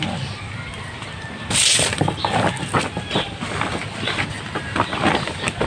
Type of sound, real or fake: real